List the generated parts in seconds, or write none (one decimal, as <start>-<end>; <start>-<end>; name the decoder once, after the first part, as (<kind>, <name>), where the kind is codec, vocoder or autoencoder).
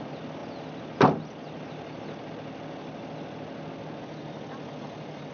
none